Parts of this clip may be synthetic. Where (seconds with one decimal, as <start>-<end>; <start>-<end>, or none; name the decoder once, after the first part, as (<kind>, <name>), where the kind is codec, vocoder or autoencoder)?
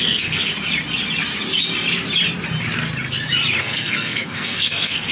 0.0-0.5 (codec, SNAC); 3.6-5.1